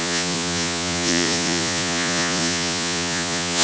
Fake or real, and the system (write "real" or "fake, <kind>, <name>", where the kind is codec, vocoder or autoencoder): fake, vocoder, Vocos